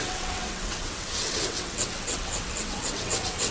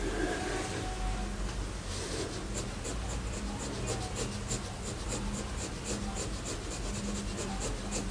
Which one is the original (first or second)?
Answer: second